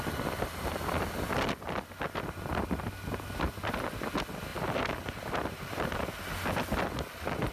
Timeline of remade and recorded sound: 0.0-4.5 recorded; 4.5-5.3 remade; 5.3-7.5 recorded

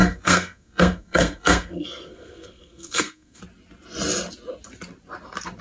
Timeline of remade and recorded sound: 0.0-3.4 remade; 3.4-5.6 recorded

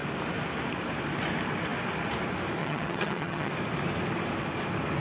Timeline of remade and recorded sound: 0.0-2.6 recorded; 2.6-3.5 remade; 3.5-5.0 recorded

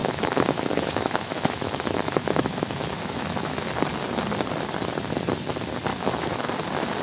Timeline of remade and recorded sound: 0.0-3.7 remade; 3.7-5.9 recorded; 5.9-6.5 remade; 6.5-7.0 recorded

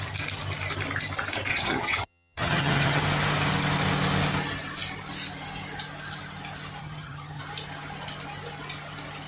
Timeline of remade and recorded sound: 0.0-1.5 recorded; 1.5-3.0 remade; 3.0-6.8 recorded; 6.8-7.4 remade; 7.4-9.3 recorded